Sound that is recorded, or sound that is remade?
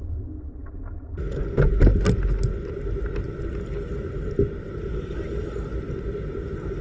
recorded